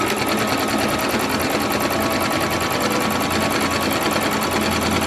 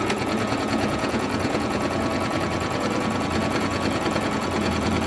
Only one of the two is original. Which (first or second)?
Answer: first